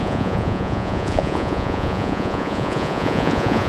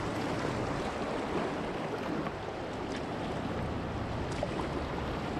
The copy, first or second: first